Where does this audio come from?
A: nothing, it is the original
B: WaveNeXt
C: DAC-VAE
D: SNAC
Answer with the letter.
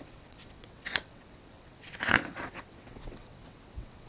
B